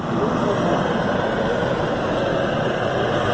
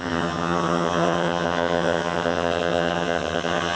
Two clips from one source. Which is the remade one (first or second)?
second